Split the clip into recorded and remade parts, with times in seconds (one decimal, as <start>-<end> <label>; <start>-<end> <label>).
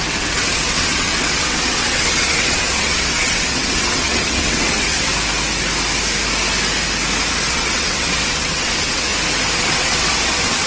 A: 0.0-5.1 remade; 5.1-7.5 recorded; 7.5-9.1 remade; 9.1-9.6 recorded; 9.6-10.7 remade